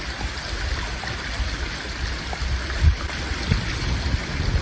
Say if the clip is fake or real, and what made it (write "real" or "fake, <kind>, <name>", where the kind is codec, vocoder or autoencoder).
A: real